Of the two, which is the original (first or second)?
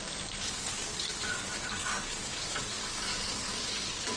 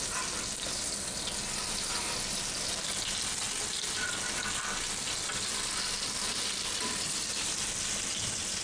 second